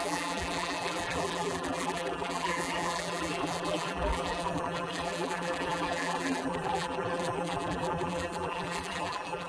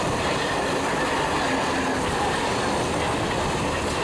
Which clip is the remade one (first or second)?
first